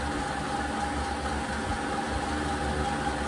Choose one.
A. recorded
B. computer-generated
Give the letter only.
A